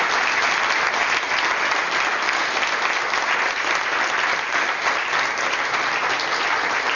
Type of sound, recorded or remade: recorded